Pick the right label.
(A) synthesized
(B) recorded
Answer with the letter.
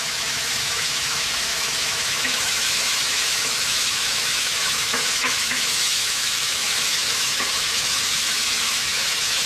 A